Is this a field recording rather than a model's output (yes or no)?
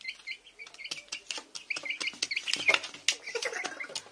yes